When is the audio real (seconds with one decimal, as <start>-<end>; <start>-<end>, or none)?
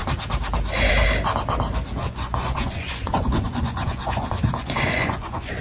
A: 0.0-2.0